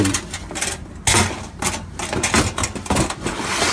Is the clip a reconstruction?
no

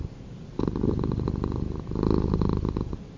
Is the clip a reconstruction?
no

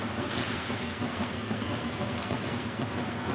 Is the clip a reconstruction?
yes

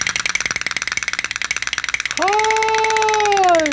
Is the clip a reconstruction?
no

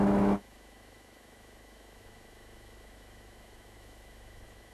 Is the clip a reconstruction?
yes